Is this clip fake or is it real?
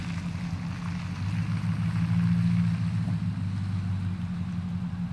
real